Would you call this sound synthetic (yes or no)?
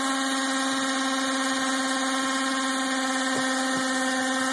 no